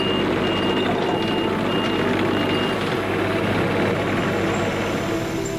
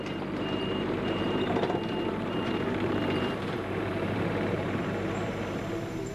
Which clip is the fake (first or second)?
second